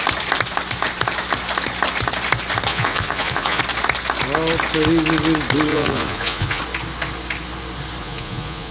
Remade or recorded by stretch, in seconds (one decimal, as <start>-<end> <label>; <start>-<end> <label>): 0.0-2.7 recorded; 2.7-3.6 remade; 3.6-5.7 recorded; 5.7-6.6 remade; 6.6-8.0 recorded; 8.0-8.7 remade

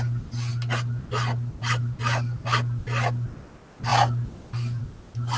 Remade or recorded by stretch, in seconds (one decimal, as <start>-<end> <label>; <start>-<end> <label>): 0.0-5.4 recorded